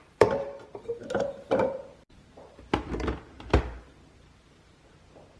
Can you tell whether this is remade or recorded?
recorded